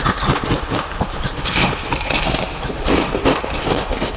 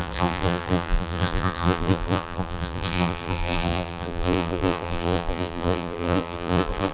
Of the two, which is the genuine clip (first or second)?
first